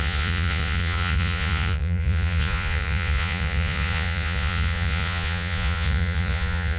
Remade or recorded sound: remade